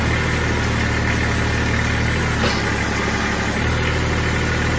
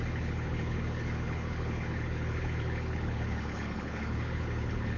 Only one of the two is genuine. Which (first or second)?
first